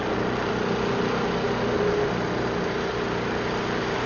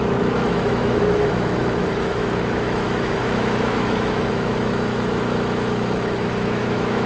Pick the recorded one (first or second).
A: first